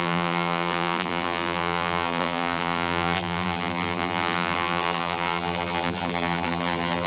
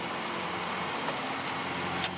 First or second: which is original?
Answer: second